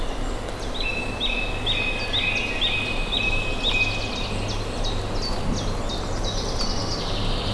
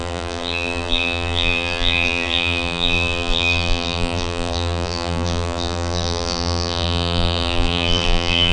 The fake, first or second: second